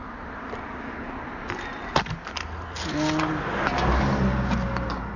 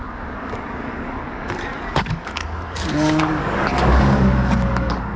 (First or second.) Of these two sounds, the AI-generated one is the second